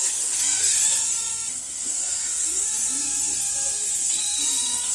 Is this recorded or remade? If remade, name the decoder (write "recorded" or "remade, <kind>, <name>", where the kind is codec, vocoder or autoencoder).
remade, codec, SNAC